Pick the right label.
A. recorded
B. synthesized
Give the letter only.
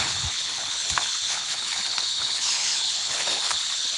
B